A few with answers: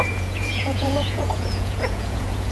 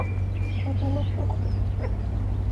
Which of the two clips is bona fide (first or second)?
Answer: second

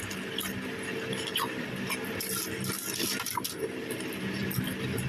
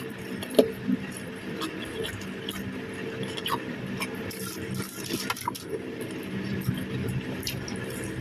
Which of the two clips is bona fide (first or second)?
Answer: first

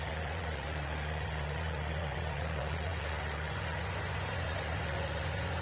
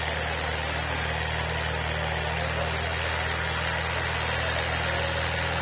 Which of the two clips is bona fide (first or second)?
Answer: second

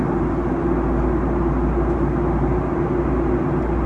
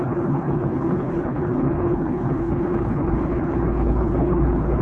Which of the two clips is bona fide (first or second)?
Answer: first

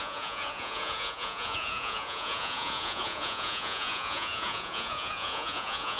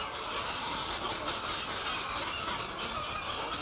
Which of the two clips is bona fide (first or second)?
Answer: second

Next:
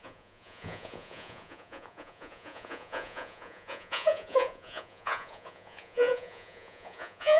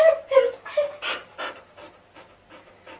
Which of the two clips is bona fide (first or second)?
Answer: second